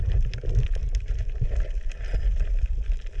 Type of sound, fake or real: real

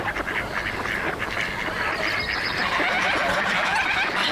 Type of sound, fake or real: real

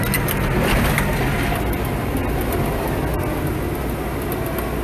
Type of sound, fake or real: real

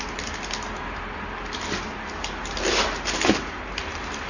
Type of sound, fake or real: real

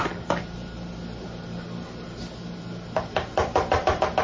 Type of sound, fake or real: real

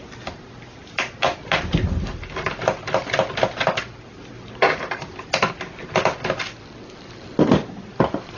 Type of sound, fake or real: real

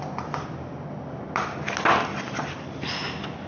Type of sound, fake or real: real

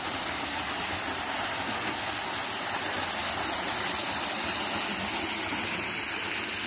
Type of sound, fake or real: real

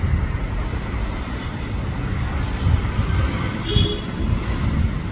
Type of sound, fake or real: real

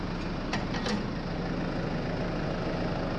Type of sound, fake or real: real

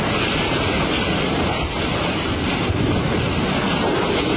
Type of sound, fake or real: real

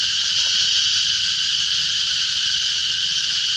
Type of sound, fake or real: real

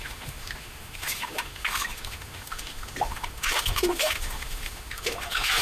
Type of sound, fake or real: fake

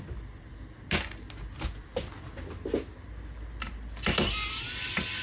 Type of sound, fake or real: real